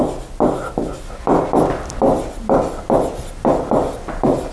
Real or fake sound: real